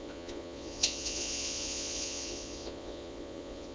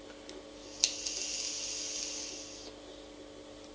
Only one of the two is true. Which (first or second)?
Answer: second